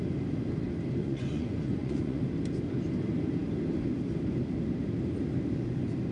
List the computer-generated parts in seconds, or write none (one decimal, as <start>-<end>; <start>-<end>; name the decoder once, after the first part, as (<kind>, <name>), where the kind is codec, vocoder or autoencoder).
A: 1.0-2.2 (vocoder, Vocos)